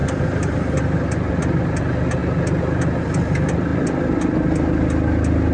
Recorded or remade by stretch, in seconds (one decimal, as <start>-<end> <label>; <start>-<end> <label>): 0.0-5.5 recorded